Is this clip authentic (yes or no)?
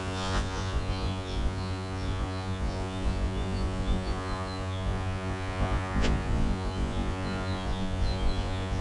no